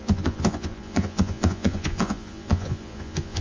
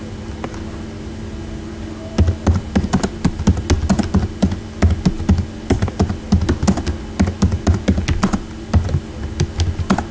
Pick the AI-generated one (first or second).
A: first